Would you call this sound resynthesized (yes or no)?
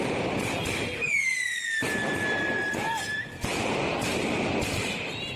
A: no